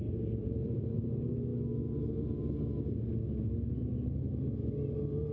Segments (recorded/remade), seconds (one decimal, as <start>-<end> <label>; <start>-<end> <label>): 0.0-0.4 recorded; 0.4-1.0 remade; 1.0-5.3 recorded